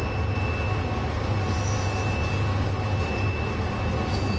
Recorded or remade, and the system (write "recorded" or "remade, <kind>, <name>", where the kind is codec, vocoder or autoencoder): recorded